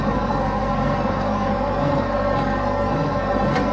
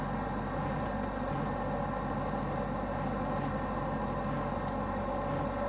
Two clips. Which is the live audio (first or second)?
second